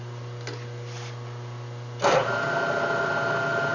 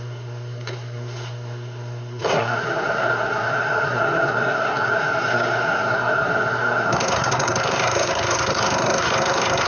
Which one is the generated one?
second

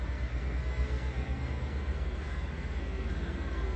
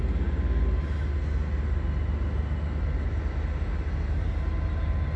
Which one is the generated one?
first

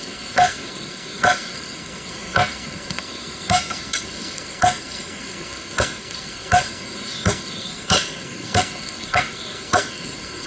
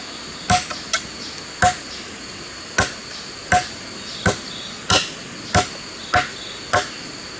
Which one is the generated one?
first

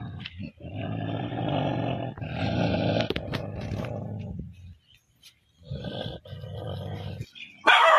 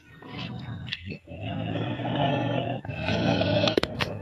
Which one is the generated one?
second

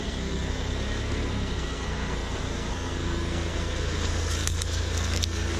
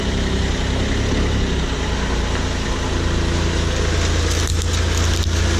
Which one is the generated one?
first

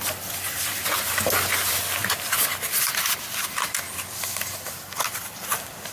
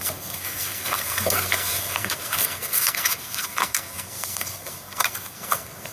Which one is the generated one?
second